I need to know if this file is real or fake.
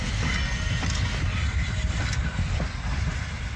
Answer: real